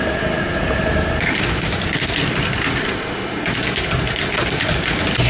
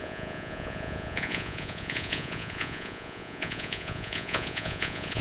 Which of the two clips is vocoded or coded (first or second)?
second